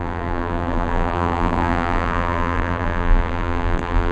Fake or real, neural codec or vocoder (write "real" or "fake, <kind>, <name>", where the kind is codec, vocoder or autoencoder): fake, vocoder, BigVGAN v2